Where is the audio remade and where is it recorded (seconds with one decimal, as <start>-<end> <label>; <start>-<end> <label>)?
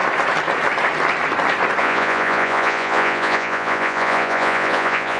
0.0-1.8 recorded; 1.8-5.2 remade